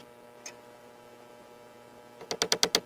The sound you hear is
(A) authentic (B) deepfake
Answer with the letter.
A